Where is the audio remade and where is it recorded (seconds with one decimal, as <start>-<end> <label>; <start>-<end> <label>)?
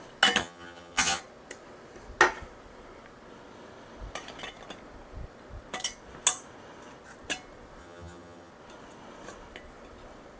0.0-0.4 recorded; 0.4-1.2 remade; 1.2-7.8 recorded; 7.8-8.5 remade; 8.5-10.4 recorded